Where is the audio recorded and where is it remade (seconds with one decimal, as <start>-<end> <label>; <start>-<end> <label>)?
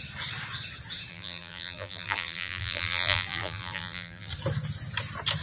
0.0-1.1 recorded; 1.1-4.3 remade; 4.3-5.4 recorded